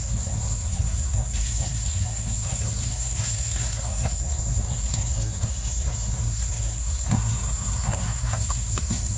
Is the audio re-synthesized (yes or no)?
yes